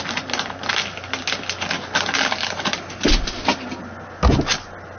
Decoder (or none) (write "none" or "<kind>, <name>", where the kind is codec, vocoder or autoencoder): none